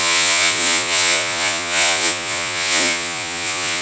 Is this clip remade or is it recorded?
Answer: remade